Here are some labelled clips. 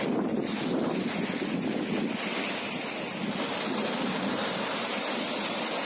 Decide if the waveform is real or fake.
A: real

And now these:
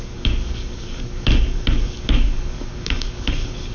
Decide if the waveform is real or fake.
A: fake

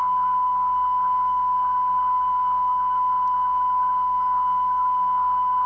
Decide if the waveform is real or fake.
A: fake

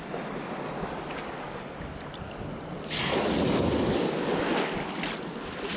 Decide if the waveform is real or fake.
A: real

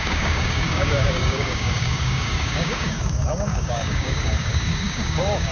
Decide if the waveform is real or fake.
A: fake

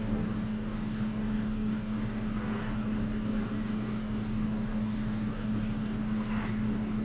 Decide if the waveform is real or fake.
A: fake